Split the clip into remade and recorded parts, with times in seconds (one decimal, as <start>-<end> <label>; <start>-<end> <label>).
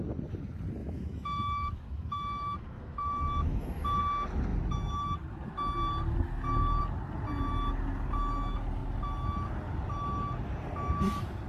0.0-0.8 recorded; 0.8-4.0 remade; 4.0-11.5 recorded